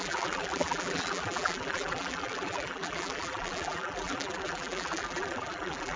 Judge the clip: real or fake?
fake